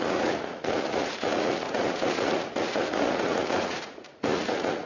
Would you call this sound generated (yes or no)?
yes